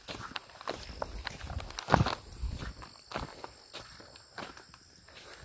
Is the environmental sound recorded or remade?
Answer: recorded